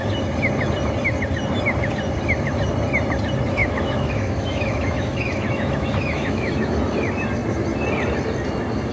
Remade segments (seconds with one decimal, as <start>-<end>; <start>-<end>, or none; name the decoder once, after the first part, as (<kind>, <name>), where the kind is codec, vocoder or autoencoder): 3.6-6.7 (autoencoder, DAC-VAE)